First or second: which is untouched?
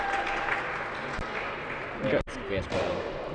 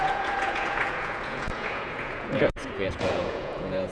first